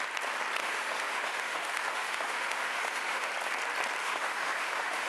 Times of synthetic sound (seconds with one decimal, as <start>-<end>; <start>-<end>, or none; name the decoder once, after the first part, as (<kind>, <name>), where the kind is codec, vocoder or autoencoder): 0.6-3.3 (autoencoder, DAC-VAE); 4.0-5.1